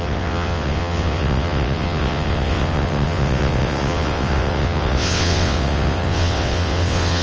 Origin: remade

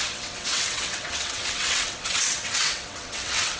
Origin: remade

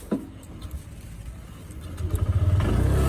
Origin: recorded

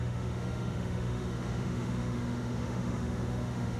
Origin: remade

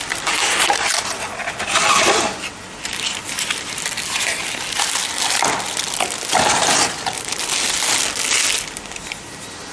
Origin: recorded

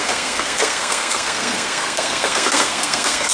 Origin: remade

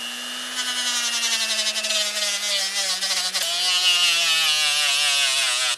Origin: recorded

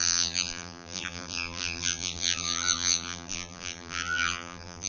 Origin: remade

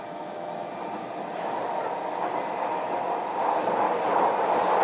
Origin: recorded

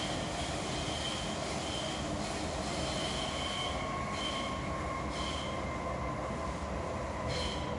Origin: recorded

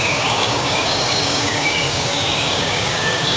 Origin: remade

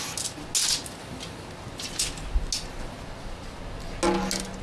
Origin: recorded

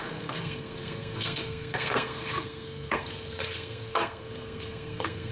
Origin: remade